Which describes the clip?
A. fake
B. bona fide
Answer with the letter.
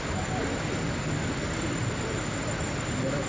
A